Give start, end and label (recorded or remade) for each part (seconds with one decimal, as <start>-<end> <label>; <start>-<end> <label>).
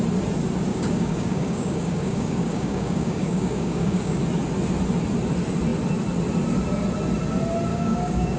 0.0-0.7 recorded; 0.7-4.2 remade; 4.2-7.7 recorded; 7.7-8.4 remade